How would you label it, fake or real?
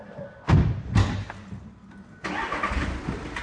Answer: real